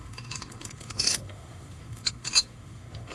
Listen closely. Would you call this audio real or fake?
fake